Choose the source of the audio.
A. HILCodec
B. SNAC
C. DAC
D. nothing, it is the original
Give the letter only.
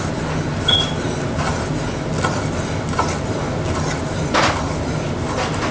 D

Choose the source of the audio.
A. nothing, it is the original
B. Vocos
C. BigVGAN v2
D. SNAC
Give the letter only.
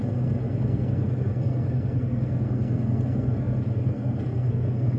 D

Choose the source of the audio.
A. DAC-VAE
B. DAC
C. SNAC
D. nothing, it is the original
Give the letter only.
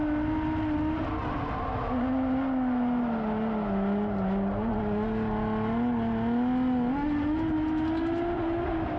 D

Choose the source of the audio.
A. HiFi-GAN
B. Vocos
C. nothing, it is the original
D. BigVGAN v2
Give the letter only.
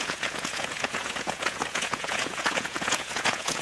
B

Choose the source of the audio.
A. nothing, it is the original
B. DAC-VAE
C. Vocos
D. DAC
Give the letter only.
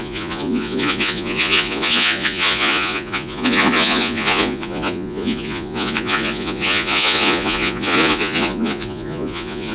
C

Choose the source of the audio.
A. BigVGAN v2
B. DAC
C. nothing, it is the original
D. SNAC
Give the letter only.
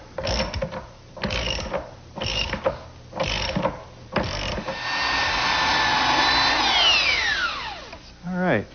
C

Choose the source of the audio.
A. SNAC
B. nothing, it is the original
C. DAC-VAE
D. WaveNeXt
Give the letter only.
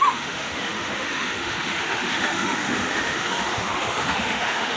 C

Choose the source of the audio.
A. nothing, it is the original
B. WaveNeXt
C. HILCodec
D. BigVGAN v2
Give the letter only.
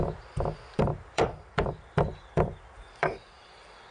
D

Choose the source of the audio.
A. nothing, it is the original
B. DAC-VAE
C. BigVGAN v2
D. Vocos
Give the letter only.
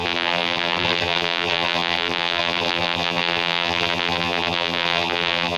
C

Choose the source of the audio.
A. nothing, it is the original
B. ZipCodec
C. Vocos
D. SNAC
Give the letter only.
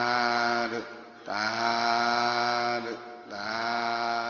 A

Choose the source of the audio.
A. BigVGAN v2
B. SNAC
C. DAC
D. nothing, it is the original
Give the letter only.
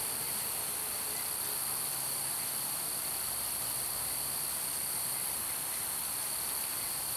D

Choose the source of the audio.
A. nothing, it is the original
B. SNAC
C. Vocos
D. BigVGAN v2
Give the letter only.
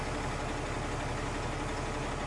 A